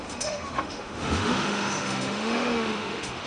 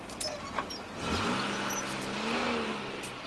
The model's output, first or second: first